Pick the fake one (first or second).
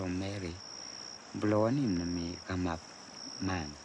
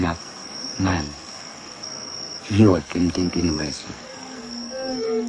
second